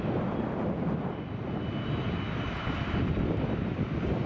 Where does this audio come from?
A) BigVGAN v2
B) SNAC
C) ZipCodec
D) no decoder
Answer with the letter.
D